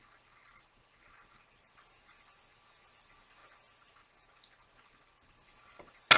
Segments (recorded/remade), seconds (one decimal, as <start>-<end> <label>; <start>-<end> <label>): 0.0-6.2 recorded